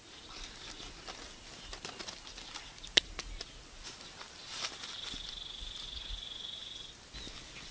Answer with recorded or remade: recorded